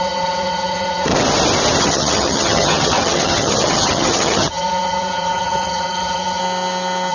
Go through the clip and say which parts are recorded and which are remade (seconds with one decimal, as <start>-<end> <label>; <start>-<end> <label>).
0.0-1.1 remade; 1.1-1.8 recorded; 1.8-6.4 remade; 6.4-7.1 recorded